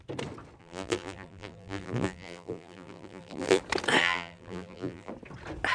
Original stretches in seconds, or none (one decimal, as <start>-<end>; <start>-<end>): 0.0-0.6; 3.6-4.0; 5.1-5.7